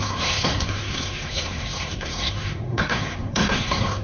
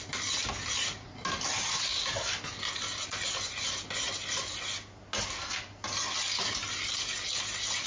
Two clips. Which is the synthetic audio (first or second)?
first